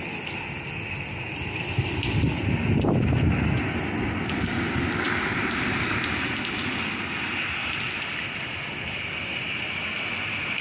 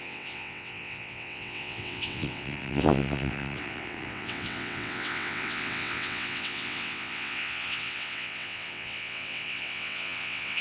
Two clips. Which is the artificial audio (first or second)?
second